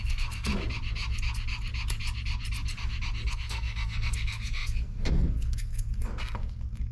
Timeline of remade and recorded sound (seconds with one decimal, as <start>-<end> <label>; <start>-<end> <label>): 0.0-0.5 remade; 0.5-3.3 recorded; 3.3-6.9 remade